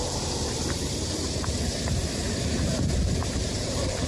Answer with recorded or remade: remade